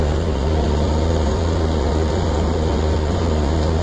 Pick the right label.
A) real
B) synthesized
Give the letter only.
B